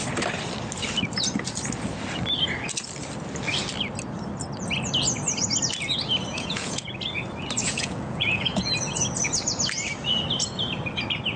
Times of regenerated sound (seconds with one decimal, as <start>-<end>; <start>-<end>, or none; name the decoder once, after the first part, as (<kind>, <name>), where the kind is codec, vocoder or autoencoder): 6.3-6.9 (vocoder, Vocos); 7.6-8.7